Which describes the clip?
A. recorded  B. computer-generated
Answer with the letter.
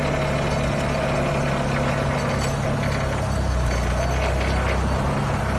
A